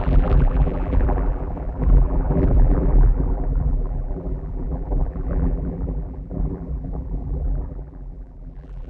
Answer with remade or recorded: remade